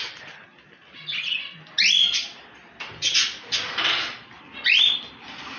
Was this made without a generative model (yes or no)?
yes